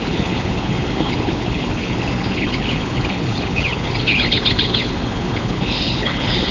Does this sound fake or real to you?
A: fake